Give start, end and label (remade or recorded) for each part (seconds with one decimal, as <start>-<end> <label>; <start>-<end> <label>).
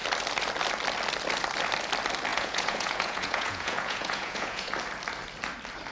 0.0-2.3 recorded; 2.3-4.7 remade; 4.7-5.9 recorded